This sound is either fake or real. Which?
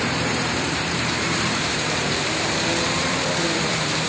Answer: fake